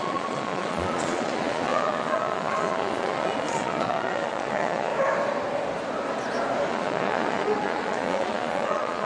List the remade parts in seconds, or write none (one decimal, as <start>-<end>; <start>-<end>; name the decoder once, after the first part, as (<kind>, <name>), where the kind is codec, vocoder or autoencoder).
0.0-4.9 (vocoder, Vocos); 6.7-9.1